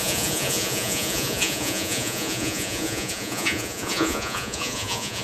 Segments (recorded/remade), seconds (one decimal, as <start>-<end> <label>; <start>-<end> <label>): 0.0-5.2 remade

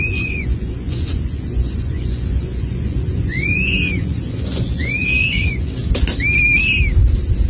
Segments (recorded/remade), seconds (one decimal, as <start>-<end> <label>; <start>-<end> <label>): 0.0-5.8 remade; 5.8-7.5 recorded

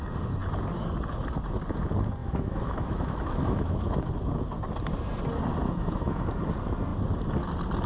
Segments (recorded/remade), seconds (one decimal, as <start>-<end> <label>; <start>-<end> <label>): 0.0-2.2 recorded; 2.2-4.1 remade; 4.1-5.6 recorded; 5.6-6.3 remade; 6.3-7.9 recorded